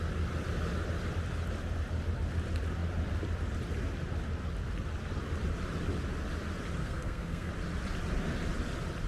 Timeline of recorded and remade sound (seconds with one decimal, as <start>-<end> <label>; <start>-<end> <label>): 0.0-6.8 recorded; 6.8-7.5 remade; 7.5-9.1 recorded